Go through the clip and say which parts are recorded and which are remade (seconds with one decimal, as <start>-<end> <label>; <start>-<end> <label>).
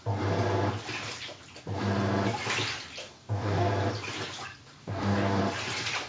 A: 0.0-3.0 recorded; 3.0-3.7 remade; 3.7-4.8 recorded; 4.8-5.4 remade; 5.4-6.1 recorded